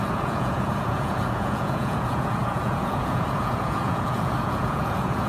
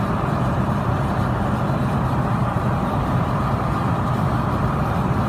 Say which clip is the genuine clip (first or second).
second